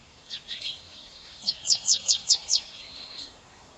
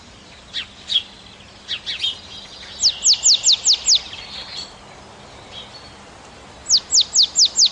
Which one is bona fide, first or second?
second